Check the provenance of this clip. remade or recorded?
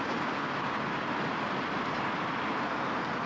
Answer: recorded